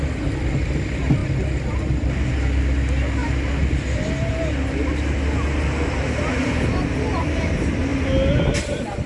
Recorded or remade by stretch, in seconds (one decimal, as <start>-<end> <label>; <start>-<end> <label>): 0.0-9.1 recorded